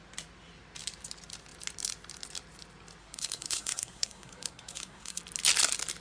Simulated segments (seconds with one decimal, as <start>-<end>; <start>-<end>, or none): 3.0-5.2